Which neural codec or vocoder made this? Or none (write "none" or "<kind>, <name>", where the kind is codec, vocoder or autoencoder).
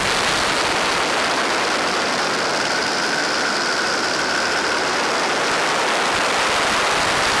none